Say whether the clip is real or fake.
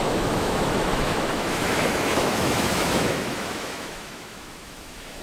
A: fake